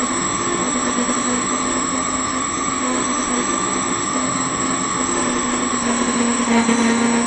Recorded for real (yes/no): no